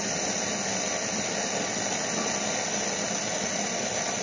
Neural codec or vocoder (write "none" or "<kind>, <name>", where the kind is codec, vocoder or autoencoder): none